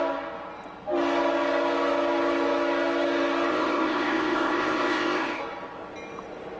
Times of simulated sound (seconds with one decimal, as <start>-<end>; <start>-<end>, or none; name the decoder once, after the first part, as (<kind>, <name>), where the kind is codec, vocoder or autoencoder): 3.5-5.4 (codec, ZipCodec)